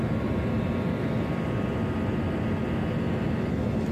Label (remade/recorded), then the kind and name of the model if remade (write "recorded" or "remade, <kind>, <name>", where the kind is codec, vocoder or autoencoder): recorded